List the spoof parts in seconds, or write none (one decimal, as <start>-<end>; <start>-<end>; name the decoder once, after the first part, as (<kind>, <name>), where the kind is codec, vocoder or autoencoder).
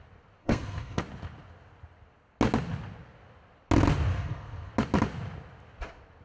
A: 0.4-1.0 (codec, SNAC); 4.1-4.7